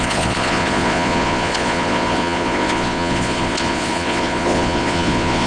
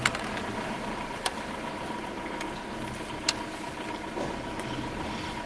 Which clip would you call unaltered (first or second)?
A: second